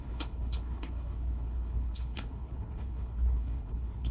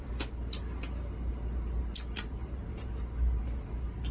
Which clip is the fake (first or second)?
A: first